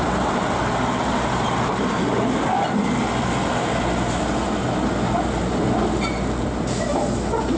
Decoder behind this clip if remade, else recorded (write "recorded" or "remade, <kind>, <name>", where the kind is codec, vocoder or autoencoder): recorded